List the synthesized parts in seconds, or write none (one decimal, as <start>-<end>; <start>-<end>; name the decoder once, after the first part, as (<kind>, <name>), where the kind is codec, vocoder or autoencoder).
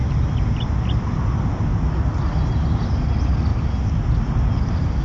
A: 3.0-3.5 (vocoder, BigVGAN v2); 4.2-5.0